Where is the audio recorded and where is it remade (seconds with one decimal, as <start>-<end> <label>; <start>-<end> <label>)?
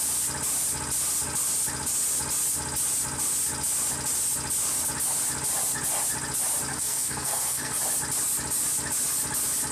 0.0-6.7 recorded; 6.7-7.8 remade; 7.8-9.7 recorded